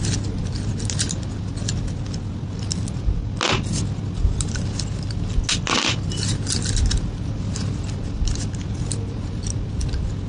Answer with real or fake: real